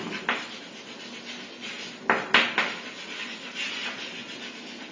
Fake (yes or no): no